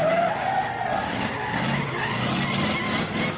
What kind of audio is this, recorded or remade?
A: recorded